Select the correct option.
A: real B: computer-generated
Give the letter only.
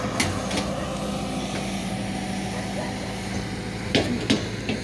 A